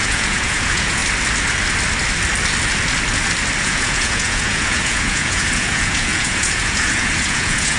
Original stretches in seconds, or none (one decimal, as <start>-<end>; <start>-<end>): 1.0-3.6